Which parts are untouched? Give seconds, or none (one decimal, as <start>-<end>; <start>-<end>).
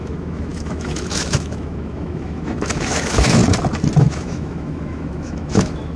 3.4-4.0